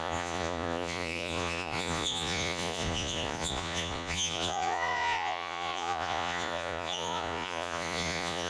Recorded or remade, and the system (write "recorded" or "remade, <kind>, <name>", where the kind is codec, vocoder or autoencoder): remade, vocoder, Vocos